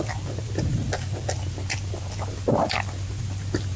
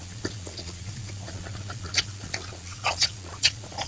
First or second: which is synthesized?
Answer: second